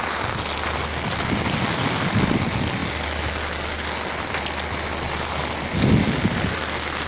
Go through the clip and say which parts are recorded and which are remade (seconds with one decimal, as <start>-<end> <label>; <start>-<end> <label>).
0.0-7.1 recorded